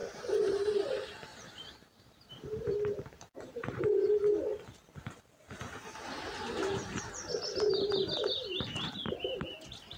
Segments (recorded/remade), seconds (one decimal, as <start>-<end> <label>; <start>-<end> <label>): 0.0-0.7 remade; 0.7-1.3 recorded; 1.3-3.8 remade; 3.8-10.0 recorded